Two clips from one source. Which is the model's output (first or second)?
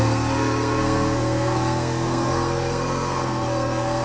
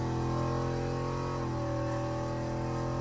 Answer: first